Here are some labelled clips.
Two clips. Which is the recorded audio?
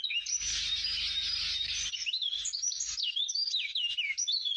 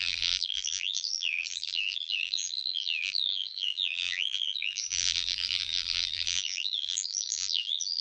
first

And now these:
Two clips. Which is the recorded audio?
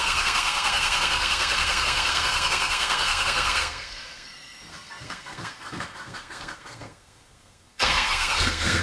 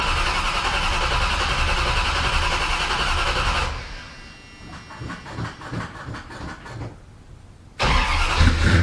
second